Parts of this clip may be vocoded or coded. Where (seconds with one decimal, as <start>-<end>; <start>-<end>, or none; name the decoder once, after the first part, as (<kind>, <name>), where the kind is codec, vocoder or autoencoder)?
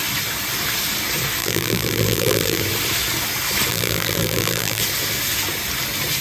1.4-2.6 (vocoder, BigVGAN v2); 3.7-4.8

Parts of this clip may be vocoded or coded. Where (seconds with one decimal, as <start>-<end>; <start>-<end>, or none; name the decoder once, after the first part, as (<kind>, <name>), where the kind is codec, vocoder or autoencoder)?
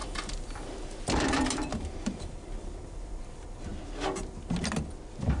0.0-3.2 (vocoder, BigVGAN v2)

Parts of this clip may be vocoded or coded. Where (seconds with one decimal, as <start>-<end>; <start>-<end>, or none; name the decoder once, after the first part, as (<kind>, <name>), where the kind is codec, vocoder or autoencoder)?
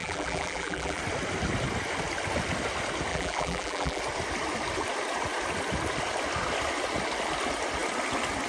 0.0-1.0 (vocoder, BigVGAN v2); 3.1-4.0